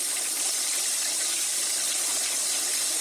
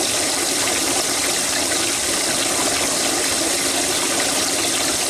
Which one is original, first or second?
second